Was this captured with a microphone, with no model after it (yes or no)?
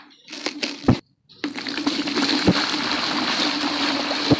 yes